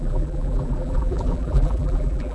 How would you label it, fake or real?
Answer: fake